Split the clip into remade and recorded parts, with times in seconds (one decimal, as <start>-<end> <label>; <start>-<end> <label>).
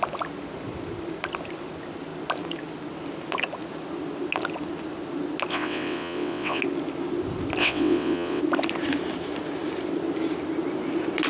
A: 0.0-5.5 recorded; 5.5-6.6 remade; 6.6-7.6 recorded; 7.6-8.4 remade; 8.4-11.3 recorded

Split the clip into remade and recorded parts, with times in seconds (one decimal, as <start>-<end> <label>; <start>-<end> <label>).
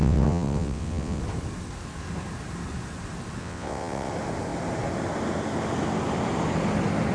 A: 0.0-1.2 remade; 1.2-3.4 recorded; 3.4-4.1 remade; 4.1-7.1 recorded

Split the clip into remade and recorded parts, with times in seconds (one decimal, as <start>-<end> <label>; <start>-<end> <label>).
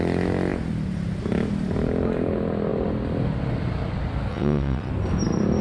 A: 0.0-4.3 recorded; 4.3-4.9 remade; 4.9-5.6 recorded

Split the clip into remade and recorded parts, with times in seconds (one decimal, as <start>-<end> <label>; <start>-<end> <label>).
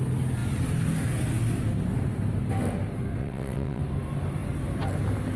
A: 0.0-3.2 recorded; 3.2-3.8 remade; 3.8-5.4 recorded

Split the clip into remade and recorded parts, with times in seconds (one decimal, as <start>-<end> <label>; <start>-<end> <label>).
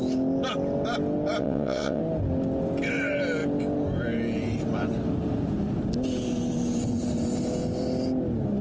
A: 0.0-1.4 recorded; 1.4-2.0 remade; 2.0-8.6 recorded